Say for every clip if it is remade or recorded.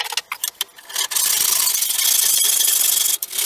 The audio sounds recorded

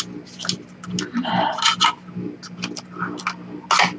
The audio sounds recorded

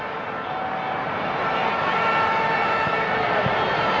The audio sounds recorded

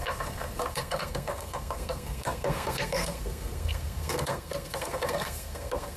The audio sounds remade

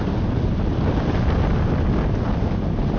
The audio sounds recorded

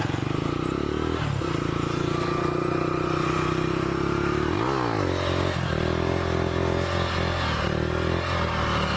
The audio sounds recorded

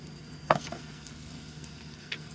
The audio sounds remade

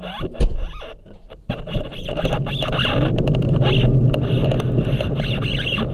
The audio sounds recorded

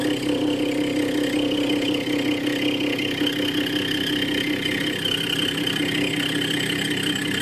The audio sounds recorded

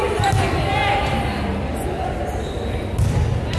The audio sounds recorded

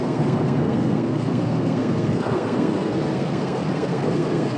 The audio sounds remade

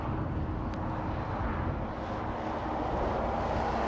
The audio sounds recorded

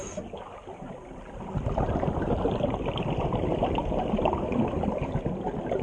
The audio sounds recorded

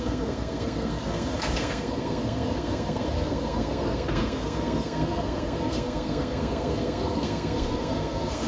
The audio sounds remade